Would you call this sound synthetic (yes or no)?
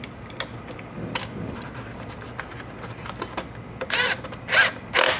no